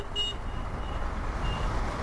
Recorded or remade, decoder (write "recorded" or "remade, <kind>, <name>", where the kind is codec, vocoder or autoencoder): recorded